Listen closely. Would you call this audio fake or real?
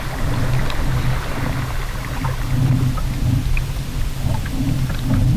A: real